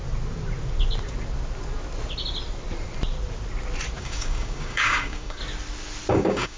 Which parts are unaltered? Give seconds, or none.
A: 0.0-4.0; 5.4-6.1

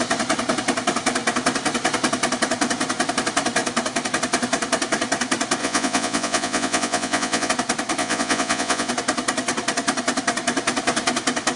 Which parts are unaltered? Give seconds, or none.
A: 0.0-5.6; 7.5-8.0; 8.9-11.6

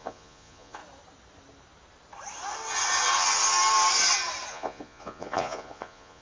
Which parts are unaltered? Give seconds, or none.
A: 0.8-4.5